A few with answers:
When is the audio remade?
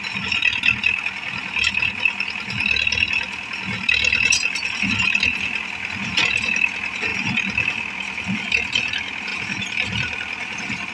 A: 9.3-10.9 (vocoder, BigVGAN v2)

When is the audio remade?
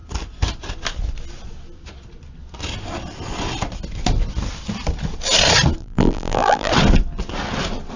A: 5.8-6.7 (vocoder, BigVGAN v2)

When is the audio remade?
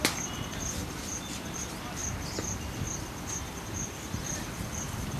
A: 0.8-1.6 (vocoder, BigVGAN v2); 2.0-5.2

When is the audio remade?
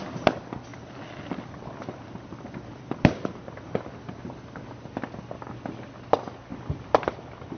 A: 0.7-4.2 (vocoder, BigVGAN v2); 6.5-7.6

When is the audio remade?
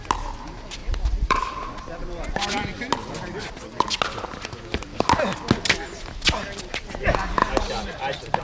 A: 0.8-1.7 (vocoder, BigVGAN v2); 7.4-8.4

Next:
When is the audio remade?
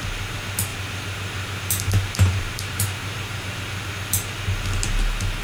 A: 0.7-3.9 (vocoder, BigVGAN v2)